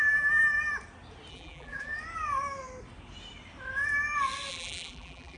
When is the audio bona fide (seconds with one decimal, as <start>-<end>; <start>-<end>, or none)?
0.4-1.3; 1.9-4.5